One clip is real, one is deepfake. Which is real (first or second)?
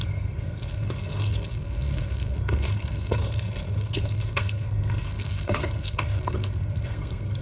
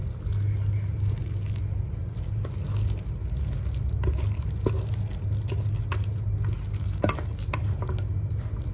second